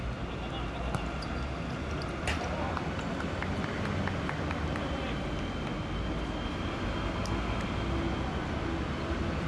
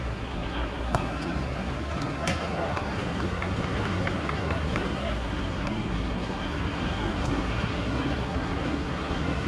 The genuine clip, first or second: first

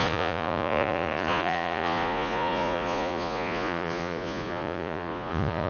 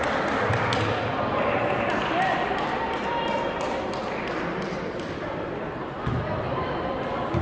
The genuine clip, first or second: second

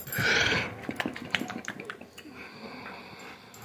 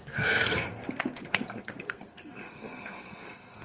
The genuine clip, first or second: first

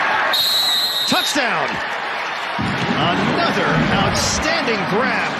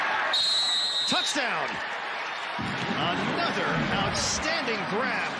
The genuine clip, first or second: second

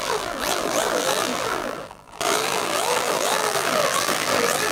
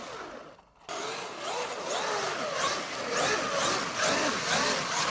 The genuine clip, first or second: second